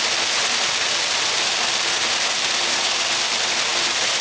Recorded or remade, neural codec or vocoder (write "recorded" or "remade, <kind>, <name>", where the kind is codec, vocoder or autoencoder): recorded